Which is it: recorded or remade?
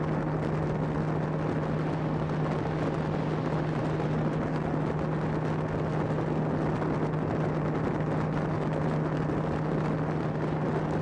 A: recorded